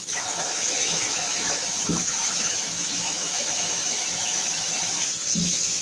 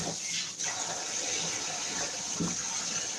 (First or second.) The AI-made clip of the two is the first